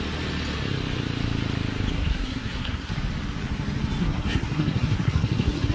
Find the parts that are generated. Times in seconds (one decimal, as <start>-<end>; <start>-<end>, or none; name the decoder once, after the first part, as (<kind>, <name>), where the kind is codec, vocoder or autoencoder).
1.9-2.9 (codec, SNAC); 4.0-5.7